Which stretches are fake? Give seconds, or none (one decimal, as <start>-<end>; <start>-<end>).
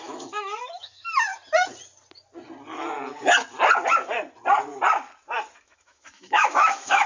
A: 0.0-1.3; 5.6-7.1